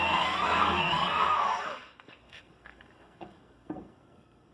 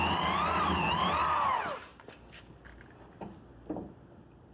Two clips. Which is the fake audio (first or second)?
first